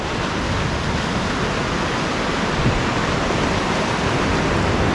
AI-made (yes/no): no